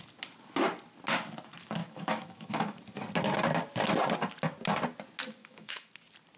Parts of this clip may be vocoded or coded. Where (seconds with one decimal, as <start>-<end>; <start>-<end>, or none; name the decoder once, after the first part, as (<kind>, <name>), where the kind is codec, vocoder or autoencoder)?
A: 1.8-2.8 (autoencoder, DAC-VAE); 5.4-5.9